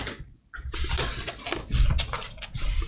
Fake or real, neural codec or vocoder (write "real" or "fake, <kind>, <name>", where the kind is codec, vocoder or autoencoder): real